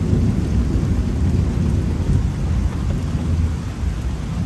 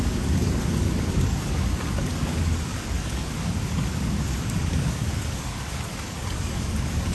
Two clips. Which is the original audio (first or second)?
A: first